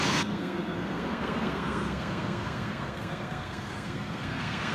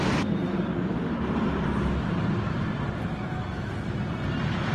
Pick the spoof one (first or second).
first